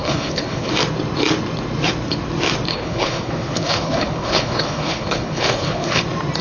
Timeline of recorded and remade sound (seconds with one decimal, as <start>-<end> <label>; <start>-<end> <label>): 0.0-0.7 remade; 0.7-2.7 recorded; 2.7-6.0 remade; 6.0-6.4 recorded